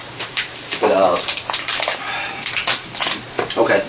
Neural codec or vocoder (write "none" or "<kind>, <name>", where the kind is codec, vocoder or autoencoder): vocoder, BigVGAN v2